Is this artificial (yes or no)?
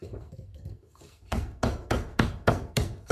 yes